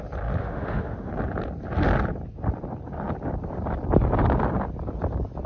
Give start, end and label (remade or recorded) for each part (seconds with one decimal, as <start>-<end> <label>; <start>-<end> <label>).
0.0-0.4 recorded; 0.4-1.1 remade; 1.1-5.5 recorded